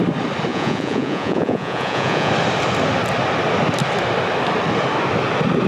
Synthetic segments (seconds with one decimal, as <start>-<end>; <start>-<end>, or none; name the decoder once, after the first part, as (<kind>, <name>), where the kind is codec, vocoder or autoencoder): 0.5-2.3 (vocoder, Vocos)